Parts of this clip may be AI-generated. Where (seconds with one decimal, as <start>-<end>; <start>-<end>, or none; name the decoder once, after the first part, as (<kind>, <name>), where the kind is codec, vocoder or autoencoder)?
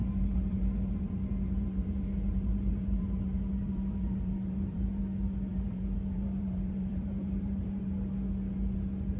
0.0-5.0 (vocoder, BigVGAN v2); 5.5-7.8